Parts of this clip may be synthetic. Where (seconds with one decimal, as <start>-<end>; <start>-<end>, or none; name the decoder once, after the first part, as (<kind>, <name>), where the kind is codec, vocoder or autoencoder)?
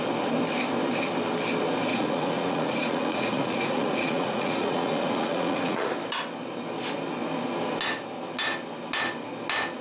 1.9-5.9 (vocoder, Vocos)